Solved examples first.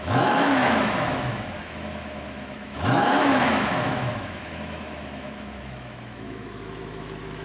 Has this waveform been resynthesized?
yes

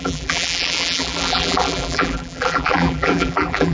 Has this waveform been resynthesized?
yes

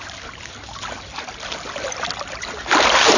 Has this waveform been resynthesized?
no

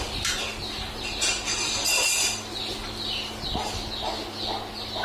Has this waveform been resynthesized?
no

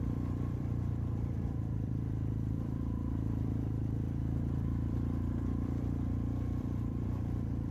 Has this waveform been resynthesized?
yes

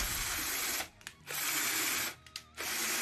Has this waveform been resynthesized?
no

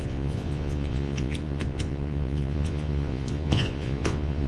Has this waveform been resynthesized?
yes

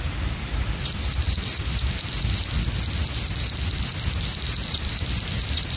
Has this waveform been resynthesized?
no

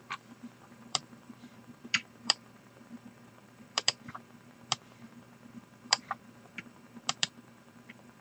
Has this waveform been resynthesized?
yes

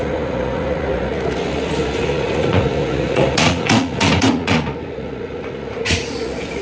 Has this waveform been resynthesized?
yes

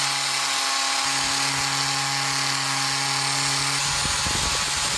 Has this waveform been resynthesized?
no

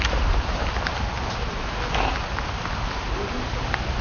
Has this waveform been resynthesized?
no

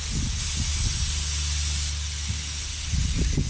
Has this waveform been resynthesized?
no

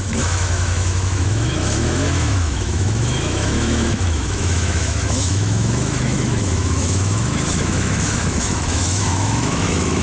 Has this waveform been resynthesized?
yes